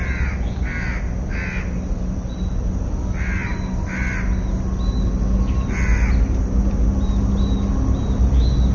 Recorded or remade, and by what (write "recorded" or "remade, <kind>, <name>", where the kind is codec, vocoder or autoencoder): recorded